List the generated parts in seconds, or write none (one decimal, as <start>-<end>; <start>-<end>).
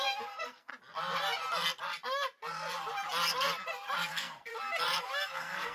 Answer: 0.0-0.7; 4.1-4.5; 5.0-5.7